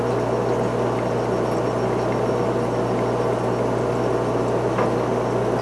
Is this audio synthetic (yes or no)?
no